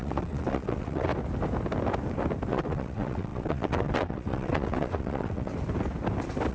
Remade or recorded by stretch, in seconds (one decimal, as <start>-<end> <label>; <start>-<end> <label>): 0.0-1.1 remade; 1.1-2.5 recorded; 2.5-5.5 remade; 5.5-6.5 recorded